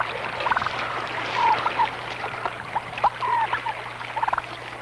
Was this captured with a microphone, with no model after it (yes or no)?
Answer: yes